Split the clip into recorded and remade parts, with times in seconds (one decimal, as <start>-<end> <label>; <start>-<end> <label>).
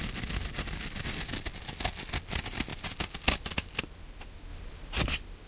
0.0-5.5 recorded